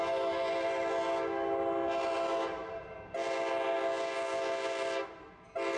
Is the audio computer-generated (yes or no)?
no